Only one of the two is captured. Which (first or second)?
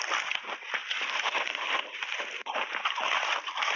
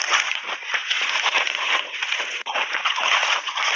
first